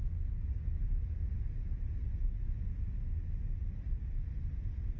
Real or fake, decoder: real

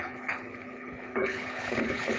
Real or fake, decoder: fake, codec, HILCodec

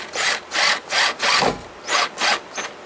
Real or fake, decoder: real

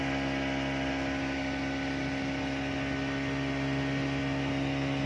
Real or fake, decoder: real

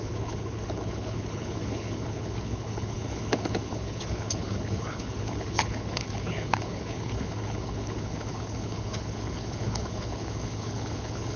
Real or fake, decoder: fake, codec, HILCodec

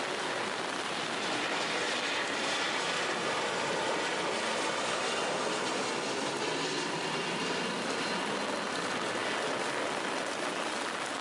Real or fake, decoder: real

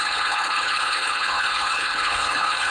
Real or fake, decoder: fake, codec, HILCodec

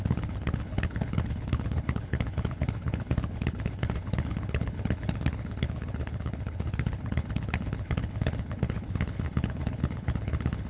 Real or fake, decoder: fake, codec, HILCodec